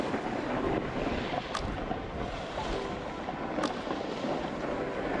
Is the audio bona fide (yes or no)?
yes